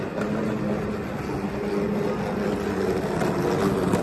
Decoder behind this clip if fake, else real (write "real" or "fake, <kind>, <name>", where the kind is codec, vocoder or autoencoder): real